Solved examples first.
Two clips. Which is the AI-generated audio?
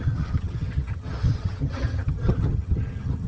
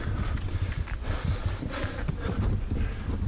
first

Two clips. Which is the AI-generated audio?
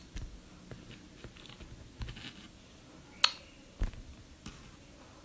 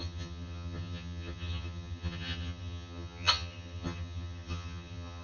second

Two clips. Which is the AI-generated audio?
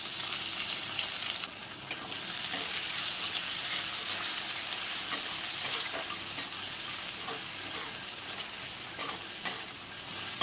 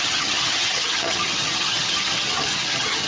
second